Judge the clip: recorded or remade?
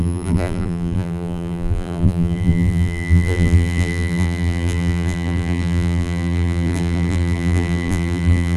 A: remade